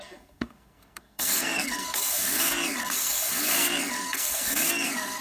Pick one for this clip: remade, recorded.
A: remade